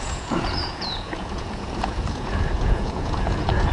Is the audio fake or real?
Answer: fake